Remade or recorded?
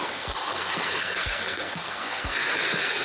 remade